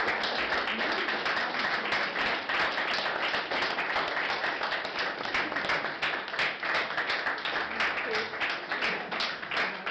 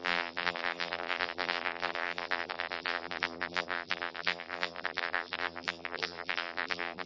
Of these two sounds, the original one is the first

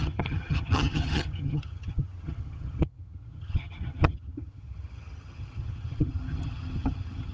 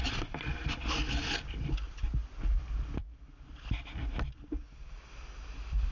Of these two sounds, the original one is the second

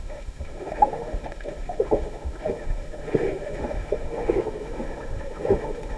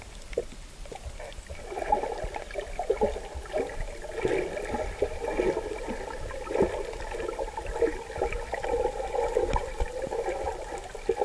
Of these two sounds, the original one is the second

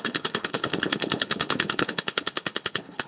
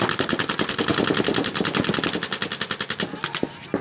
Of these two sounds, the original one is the second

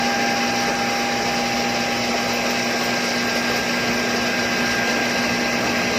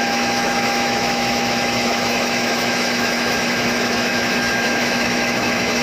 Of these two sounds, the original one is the first